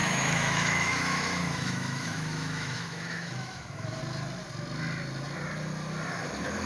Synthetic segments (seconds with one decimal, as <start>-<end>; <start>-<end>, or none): 0.0-4.0